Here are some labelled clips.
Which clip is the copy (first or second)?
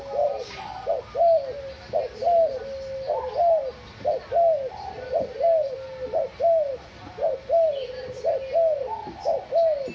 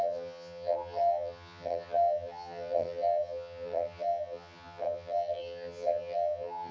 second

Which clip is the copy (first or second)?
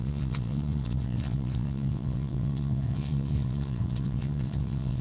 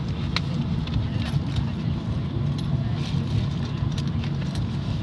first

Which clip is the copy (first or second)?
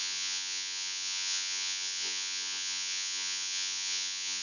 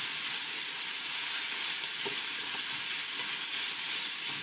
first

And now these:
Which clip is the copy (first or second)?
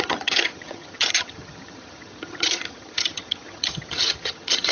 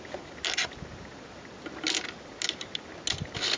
first